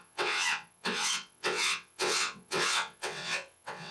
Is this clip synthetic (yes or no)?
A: yes